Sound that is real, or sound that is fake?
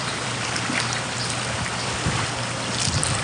fake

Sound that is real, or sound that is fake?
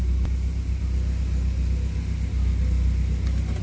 real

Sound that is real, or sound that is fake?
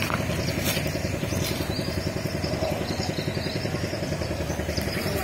real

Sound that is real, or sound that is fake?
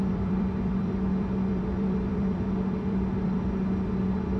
fake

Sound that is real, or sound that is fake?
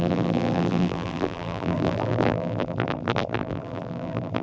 fake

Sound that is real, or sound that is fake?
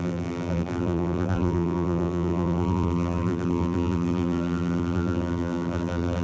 fake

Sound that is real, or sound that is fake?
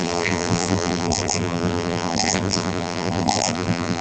fake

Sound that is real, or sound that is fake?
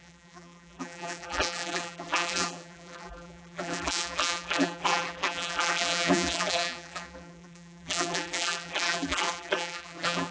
fake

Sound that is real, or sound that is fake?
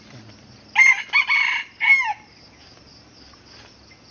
real